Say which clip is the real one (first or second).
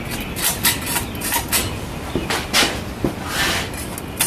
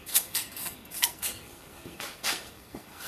first